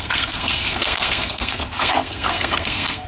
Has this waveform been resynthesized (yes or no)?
yes